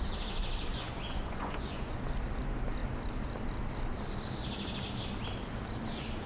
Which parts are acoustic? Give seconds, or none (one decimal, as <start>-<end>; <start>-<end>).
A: 0.0-0.7; 2.0-6.3